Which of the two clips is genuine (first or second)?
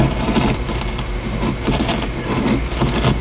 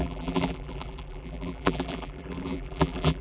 first